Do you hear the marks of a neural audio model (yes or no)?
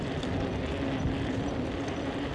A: no